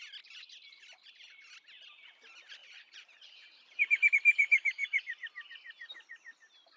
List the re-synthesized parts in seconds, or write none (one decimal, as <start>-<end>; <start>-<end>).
2.6-4.1